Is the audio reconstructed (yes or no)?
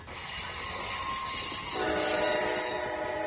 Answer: no